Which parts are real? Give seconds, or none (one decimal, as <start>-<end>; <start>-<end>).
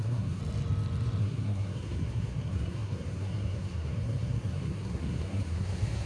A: 0.4-1.2